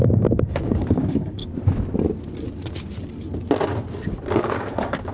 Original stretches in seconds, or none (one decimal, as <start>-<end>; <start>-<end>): 1.4-4.3